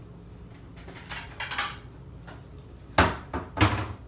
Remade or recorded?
recorded